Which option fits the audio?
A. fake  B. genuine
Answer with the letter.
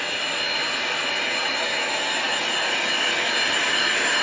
B